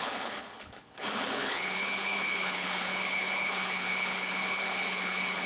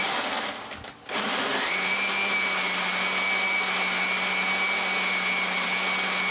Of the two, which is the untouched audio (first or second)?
second